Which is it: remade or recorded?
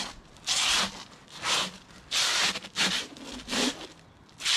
recorded